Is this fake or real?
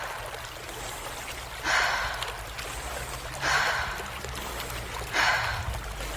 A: real